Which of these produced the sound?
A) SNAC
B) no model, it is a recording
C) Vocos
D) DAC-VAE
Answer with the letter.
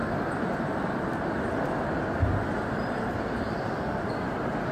B